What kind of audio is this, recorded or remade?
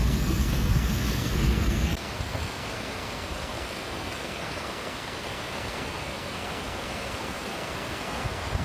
remade